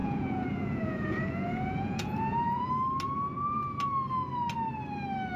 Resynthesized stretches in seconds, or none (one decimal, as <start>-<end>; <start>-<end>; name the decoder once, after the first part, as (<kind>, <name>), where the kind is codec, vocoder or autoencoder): 0.0-2.7 (vocoder, Vocos)